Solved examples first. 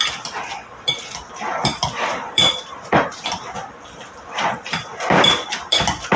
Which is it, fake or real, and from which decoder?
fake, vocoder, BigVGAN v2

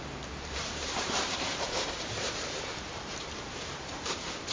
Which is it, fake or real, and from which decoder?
fake, vocoder, BigVGAN v2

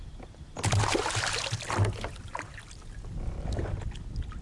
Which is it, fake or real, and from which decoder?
real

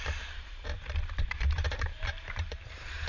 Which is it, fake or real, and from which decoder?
fake, vocoder, BigVGAN v2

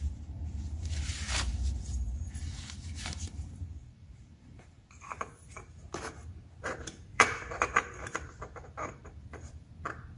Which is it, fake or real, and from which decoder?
fake, vocoder, BigVGAN v2